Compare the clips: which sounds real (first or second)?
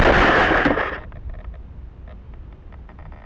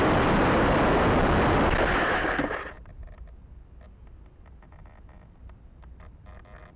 second